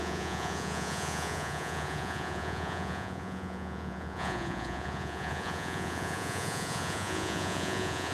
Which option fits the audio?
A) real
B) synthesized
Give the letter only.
B